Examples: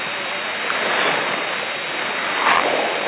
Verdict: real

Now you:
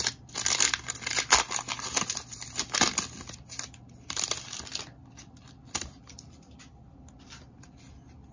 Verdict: real